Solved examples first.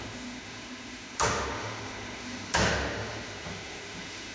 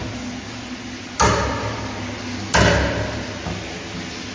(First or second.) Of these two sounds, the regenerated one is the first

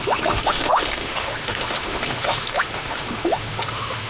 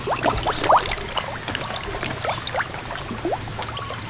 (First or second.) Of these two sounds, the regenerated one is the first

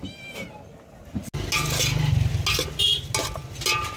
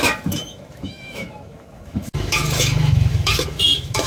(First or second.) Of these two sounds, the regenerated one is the second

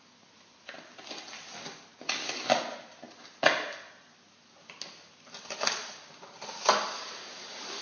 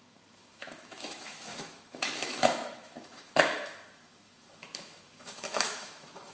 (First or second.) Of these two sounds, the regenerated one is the second